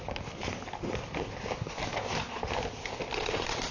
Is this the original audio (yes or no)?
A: yes